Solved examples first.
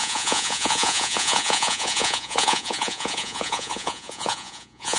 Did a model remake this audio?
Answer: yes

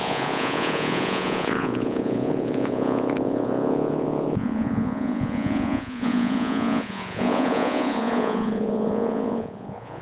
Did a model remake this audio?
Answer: yes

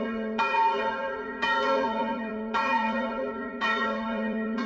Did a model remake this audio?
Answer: yes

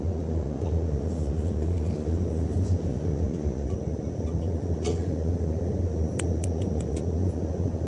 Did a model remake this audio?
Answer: yes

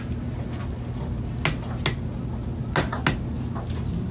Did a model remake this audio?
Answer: no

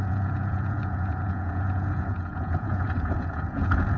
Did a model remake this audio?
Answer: yes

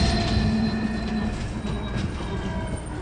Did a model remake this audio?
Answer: no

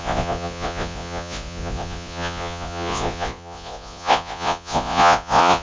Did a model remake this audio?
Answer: yes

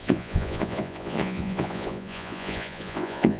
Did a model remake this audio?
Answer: yes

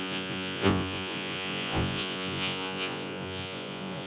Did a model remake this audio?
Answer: yes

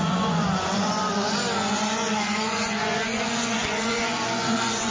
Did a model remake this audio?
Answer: yes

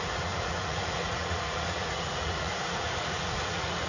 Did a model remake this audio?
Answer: yes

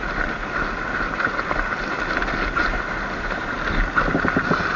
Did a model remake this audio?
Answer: no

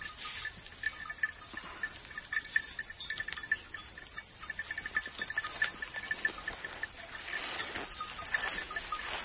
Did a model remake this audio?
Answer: no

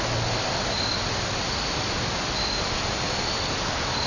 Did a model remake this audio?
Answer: no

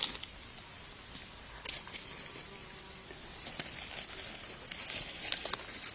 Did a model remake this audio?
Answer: no